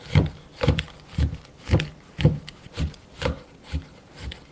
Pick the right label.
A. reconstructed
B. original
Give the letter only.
B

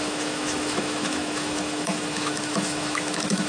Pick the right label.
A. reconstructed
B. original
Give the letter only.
A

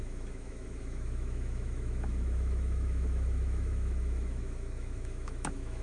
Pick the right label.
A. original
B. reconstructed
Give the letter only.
B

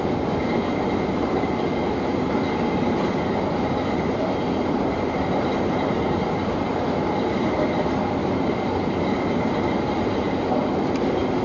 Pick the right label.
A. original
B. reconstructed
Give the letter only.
A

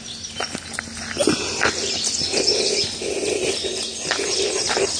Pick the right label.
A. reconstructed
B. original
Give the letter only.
B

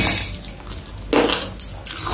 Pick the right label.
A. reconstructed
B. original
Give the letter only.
B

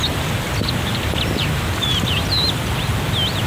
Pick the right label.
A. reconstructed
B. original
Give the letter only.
B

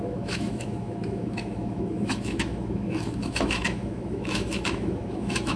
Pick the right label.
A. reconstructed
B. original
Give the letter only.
A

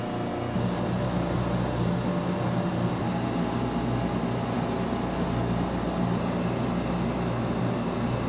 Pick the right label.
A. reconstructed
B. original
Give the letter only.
B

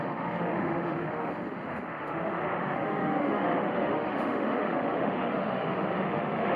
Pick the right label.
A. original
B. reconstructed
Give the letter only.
B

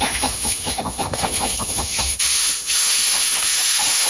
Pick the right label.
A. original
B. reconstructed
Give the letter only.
B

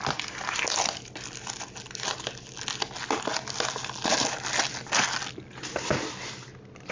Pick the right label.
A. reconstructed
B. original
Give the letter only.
B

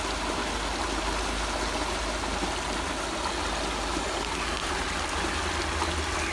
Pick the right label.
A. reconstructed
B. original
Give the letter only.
B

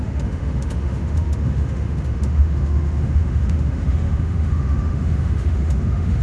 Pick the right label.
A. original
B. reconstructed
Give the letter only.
B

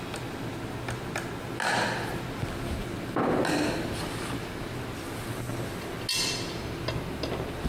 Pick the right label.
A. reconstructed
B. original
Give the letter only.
B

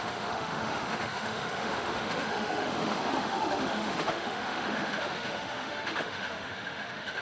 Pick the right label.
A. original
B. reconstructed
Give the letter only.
B